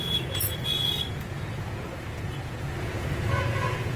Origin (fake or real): fake